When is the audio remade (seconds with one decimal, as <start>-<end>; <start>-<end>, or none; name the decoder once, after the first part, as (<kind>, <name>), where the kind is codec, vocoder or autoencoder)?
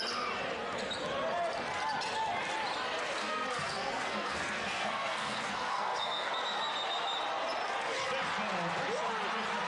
3.2-6.3 (codec, SNAC)